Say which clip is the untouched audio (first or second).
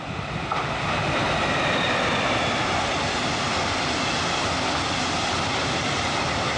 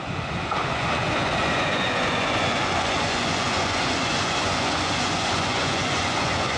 first